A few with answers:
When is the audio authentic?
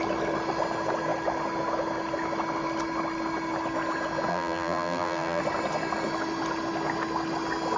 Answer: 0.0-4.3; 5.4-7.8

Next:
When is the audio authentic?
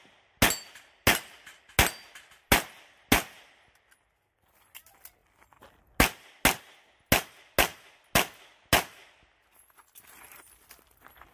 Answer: 0.0-11.3